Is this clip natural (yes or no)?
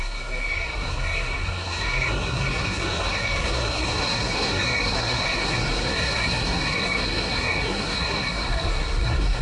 no